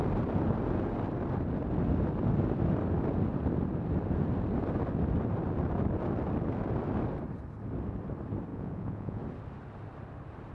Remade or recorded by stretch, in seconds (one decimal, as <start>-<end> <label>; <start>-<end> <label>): 0.0-8.5 recorded; 8.5-9.2 remade; 9.2-10.5 recorded